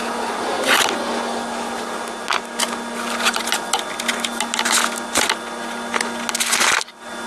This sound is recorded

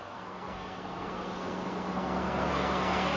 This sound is remade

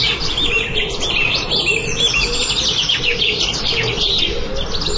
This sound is recorded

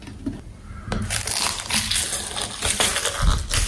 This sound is recorded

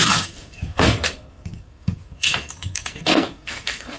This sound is remade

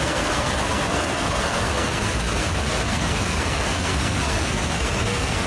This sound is remade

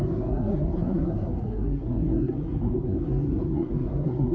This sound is remade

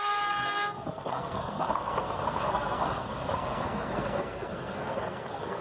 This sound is remade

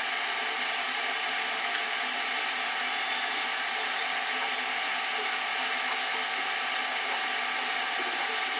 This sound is recorded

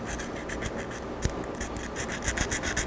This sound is recorded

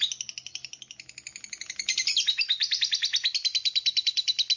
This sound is recorded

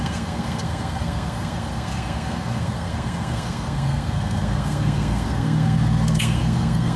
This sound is remade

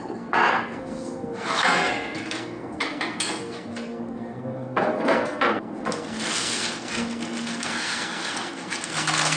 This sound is remade